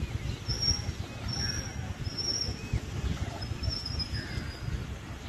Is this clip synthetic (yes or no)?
no